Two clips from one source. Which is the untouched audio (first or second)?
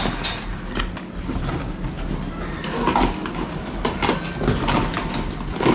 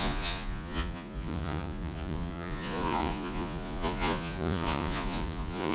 first